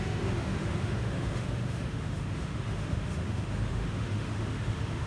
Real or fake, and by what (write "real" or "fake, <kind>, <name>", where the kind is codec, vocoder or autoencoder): fake, autoencoder, DAC-VAE